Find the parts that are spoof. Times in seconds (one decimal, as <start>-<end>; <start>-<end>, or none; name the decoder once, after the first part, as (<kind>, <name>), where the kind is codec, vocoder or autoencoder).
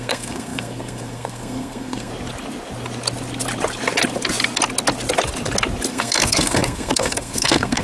0.0-2.1 (codec, SNAC); 5.9-7.8